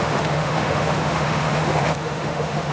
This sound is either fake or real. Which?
fake